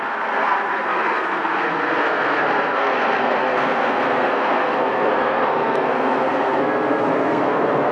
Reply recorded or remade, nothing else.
remade